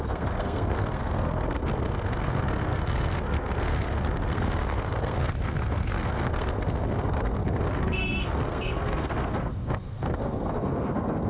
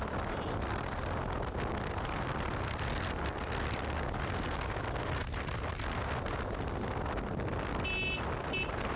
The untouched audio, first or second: second